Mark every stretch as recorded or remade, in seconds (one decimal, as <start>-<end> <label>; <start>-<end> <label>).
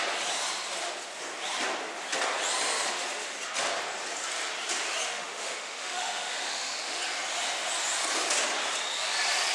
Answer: 0.0-5.1 recorded; 5.1-7.0 remade; 7.0-9.5 recorded